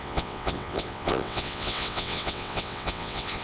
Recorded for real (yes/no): no